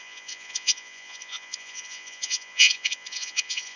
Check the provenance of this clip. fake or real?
fake